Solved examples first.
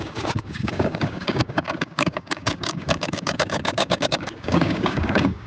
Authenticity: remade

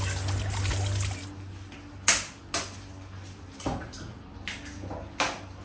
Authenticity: recorded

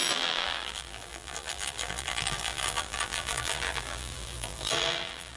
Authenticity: remade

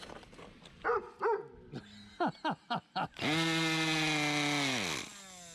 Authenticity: recorded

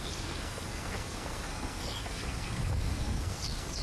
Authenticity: remade